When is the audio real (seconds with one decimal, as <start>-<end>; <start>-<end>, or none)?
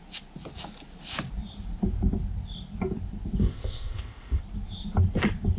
0.0-3.4; 4.4-5.6